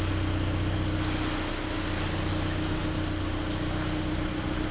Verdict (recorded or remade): recorded